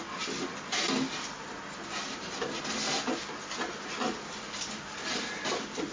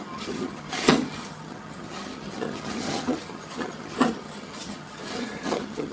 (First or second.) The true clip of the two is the first